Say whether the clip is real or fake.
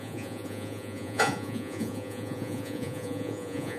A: fake